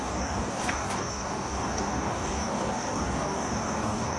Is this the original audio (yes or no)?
no